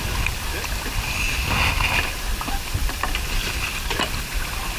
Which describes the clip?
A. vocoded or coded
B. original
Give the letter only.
B